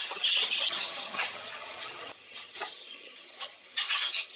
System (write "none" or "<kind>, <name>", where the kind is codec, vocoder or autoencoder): vocoder, HiFi-GAN